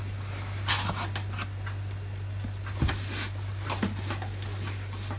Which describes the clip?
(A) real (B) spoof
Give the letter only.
A